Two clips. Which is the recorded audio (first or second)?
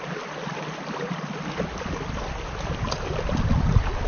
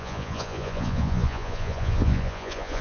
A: first